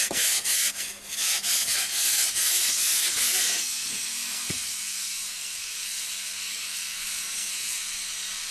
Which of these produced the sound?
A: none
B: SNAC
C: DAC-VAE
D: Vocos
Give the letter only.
B